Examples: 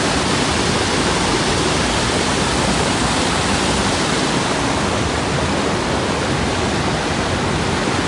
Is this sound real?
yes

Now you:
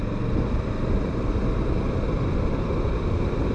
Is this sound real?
yes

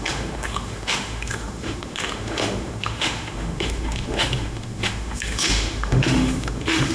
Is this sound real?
no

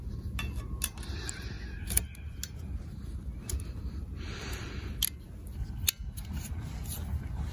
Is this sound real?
yes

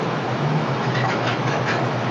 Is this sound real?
no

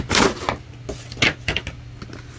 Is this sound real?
yes